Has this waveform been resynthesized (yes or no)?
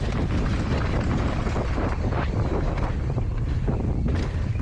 no